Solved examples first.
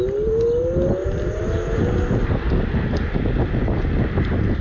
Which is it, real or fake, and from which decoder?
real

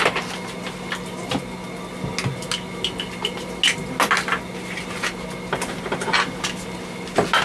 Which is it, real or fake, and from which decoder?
real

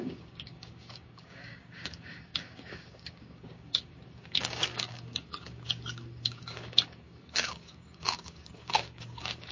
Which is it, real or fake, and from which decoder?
fake, codec, DAC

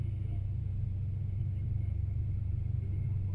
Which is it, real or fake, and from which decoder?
real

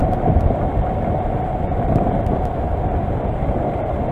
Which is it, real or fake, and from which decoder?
real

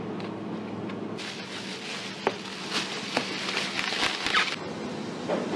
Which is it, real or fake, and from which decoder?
real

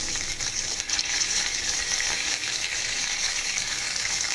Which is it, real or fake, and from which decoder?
fake, codec, DAC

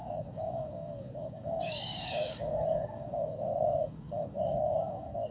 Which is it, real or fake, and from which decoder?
fake, codec, DAC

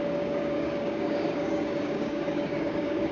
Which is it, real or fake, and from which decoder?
fake, codec, DAC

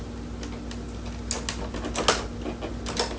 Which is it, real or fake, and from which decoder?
real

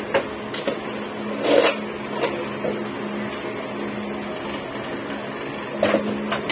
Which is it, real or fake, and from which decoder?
real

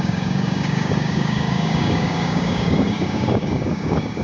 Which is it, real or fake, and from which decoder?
fake, codec, DAC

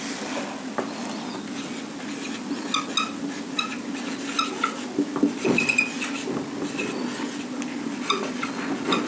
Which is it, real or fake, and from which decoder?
real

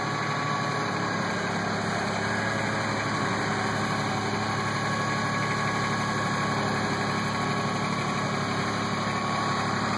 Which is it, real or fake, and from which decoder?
real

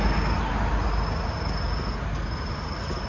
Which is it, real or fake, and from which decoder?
real